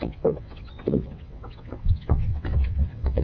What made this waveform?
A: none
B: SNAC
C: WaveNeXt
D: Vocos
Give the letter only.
C